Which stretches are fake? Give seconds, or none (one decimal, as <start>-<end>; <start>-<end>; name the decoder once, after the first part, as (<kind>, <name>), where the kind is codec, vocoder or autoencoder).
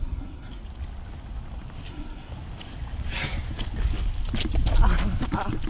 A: 0.0-0.6 (codec, SNAC); 1.9-2.3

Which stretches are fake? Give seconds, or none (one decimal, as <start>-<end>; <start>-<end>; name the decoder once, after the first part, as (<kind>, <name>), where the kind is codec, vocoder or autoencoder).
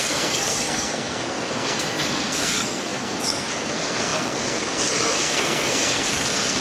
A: 0.0-6.6 (codec, SNAC)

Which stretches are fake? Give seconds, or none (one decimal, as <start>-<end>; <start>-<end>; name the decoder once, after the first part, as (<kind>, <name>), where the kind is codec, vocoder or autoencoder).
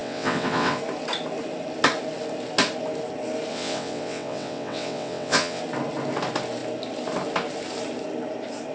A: 0.0-0.8 (vocoder, WaveNeXt); 3.5-5.6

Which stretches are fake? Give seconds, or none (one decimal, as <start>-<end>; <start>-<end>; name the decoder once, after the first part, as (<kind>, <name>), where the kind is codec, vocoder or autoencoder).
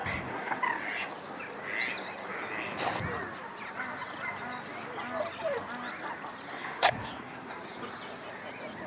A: 0.0-0.6 (codec, SNAC); 6.5-7.5